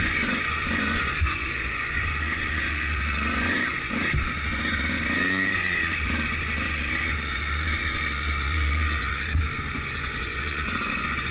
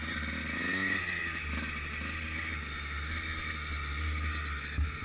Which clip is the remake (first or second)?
first